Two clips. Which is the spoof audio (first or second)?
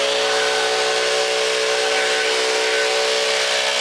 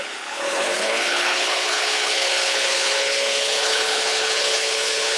second